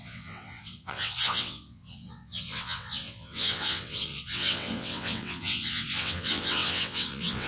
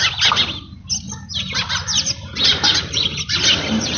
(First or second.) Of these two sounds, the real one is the second